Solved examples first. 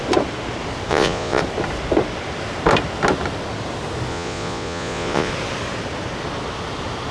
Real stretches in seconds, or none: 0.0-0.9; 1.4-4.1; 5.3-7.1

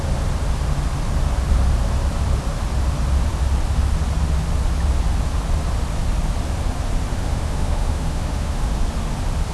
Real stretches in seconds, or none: 0.0-7.1; 8.8-9.5

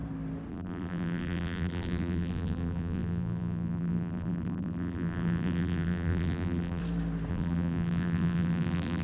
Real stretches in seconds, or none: 0.0-0.5; 6.8-7.3